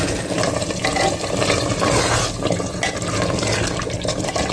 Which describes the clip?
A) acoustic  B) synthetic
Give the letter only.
A